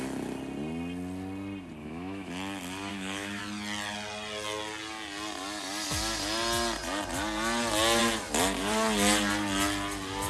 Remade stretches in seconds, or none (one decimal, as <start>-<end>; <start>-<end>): 1.8-2.3; 2.9-3.4